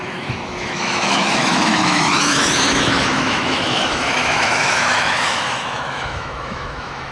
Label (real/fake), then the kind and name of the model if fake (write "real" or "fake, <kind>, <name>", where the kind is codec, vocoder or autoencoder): fake, autoencoder, DAC-VAE